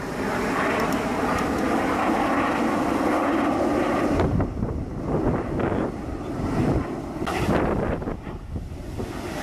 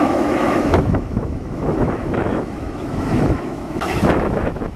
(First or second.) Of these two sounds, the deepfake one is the second